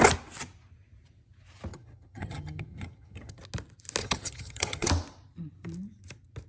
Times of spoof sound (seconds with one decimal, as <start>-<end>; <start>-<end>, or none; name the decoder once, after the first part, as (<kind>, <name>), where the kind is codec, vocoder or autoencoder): 1.7-3.4 (vocoder, HiFi-GAN); 4.0-4.9